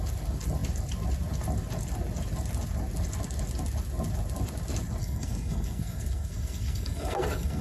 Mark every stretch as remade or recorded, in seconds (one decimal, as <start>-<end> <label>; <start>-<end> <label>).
0.0-5.0 recorded; 5.0-7.6 remade